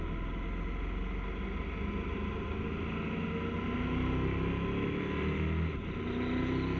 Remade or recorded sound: recorded